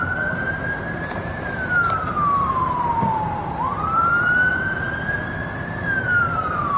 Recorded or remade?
remade